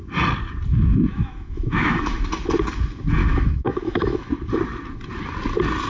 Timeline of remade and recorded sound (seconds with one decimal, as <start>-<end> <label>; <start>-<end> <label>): 0.0-0.7 recorded; 0.7-2.2 remade; 2.2-3.2 recorded; 3.2-4.3 remade; 4.3-5.9 recorded